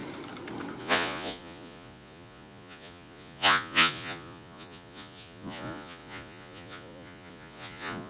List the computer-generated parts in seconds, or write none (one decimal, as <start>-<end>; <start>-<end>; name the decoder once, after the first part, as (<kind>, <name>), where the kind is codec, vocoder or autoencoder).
0.8-8.1 (vocoder, Vocos)